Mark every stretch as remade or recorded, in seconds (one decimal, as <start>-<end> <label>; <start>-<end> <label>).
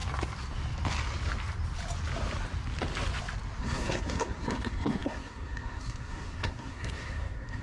0.0-3.6 recorded; 3.6-7.6 remade